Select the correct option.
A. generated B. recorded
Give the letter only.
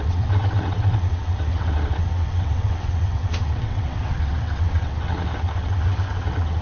A